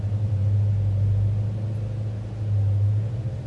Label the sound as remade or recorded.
recorded